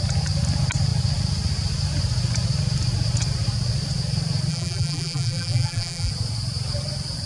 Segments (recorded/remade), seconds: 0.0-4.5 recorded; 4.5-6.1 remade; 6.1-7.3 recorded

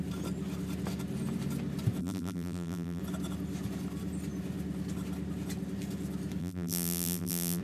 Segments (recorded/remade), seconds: 0.0-2.0 recorded; 2.0-3.0 remade; 3.0-6.4 recorded; 6.4-7.6 remade

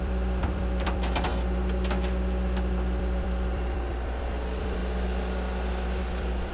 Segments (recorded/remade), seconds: 0.0-1.3 remade; 1.3-3.0 recorded; 3.0-4.8 remade; 4.8-6.0 recorded; 6.0-6.5 remade

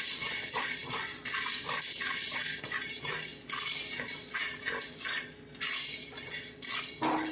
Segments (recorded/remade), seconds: 0.0-7.3 recorded

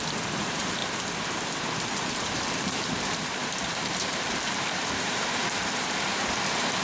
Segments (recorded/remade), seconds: 0.0-0.8 remade; 0.8-2.1 recorded; 2.1-6.8 remade

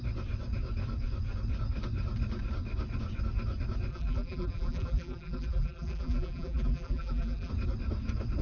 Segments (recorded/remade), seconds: 0.0-3.9 recorded; 3.9-7.5 remade; 7.5-8.4 recorded

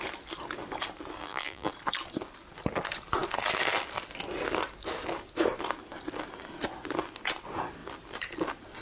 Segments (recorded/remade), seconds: 0.0-1.2 recorded; 1.2-1.7 remade; 1.7-8.8 recorded

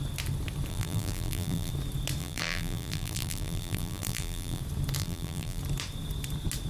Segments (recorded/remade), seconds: 0.0-0.7 recorded; 0.7-1.7 remade; 1.7-2.2 recorded; 2.2-4.6 remade; 4.6-5.0 recorded; 5.0-5.6 remade; 5.6-6.7 recorded